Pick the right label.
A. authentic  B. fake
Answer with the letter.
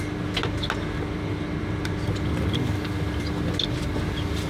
A